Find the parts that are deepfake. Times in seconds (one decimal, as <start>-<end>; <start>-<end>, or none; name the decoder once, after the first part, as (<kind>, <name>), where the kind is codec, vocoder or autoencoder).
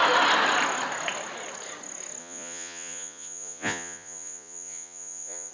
2.2-5.5 (vocoder, Vocos)